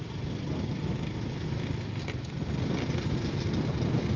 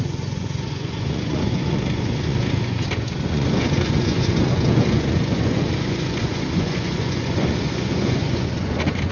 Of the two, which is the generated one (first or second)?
second